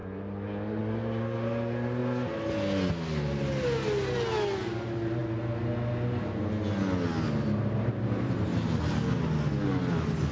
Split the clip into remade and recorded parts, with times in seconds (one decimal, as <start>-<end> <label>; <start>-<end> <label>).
0.0-10.3 recorded